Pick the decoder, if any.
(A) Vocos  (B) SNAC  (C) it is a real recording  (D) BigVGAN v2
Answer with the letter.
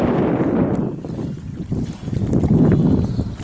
C